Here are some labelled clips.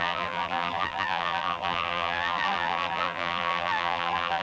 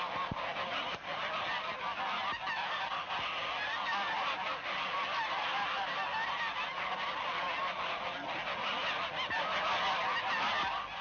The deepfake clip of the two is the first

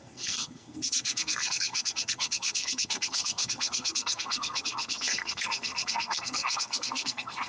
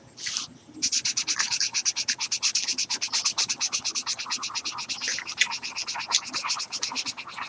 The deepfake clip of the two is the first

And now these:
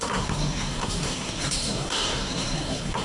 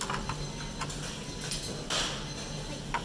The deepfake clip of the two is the first